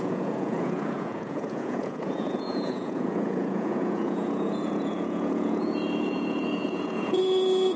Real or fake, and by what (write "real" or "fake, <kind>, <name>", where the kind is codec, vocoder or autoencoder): fake, vocoder, Vocos